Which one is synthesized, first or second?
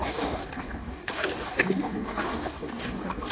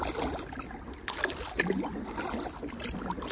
first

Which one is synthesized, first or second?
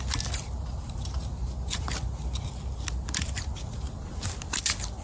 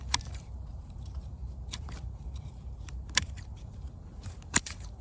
second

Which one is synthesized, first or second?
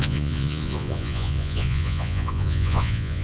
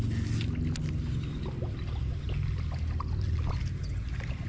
first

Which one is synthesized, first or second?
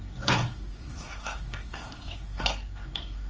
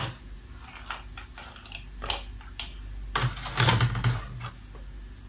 first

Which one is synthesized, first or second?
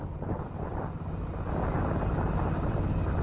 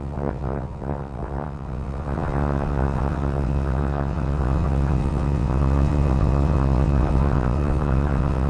second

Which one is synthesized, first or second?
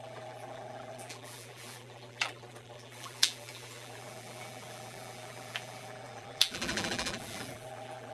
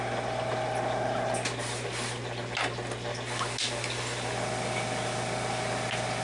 first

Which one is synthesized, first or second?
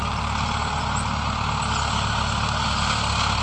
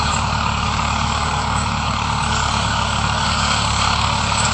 second